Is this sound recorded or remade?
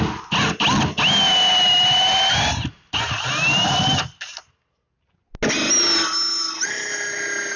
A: recorded